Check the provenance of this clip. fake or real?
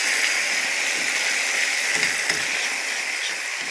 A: real